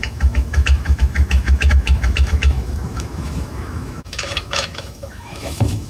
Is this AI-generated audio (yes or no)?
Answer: yes